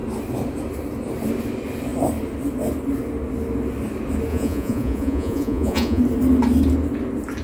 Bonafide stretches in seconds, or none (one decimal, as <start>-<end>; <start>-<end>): 0.0-4.3; 6.0-7.4